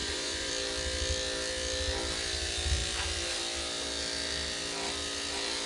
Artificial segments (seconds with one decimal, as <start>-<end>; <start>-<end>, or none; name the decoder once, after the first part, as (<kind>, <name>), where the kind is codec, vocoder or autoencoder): 0.0-0.5 (vocoder, Vocos)